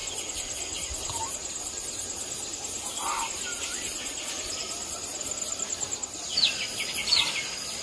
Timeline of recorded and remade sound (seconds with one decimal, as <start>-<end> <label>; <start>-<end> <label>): 0.0-7.8 recorded